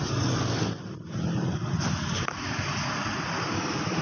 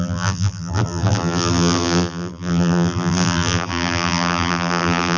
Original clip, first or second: first